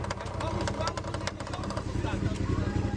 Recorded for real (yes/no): yes